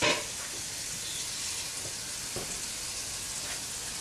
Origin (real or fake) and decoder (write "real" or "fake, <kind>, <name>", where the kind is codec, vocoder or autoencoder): real